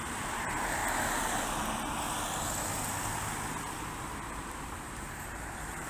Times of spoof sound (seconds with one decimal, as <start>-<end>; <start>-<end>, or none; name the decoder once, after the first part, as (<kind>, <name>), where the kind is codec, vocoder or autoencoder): 0.0-0.8 (vocoder, BigVGAN v2); 4.3-5.9